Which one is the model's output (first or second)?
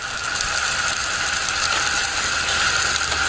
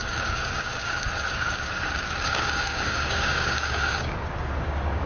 second